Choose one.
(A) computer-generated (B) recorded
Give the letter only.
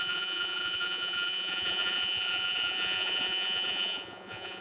A